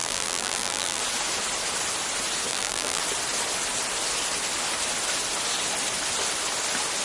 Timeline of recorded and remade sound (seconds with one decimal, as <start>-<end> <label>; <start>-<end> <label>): 0.0-1.0 remade; 1.0-2.5 recorded; 2.5-3.0 remade; 3.0-7.0 recorded